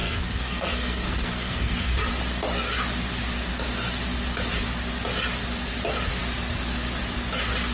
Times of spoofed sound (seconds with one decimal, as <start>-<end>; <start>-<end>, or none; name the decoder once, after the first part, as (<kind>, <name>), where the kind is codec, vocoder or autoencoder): 0.0-2.0 (codec, SNAC)